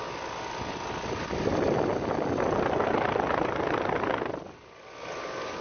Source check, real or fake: real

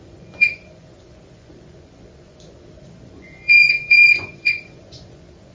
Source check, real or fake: fake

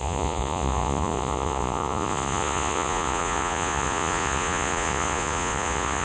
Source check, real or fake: fake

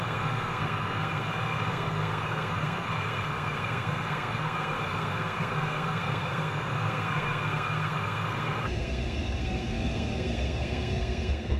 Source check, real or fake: fake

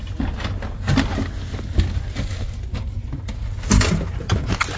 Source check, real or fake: real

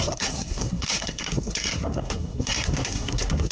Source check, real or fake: fake